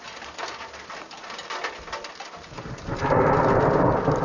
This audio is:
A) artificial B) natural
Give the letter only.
B